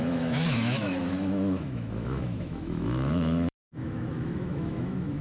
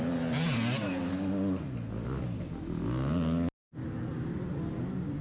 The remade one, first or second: first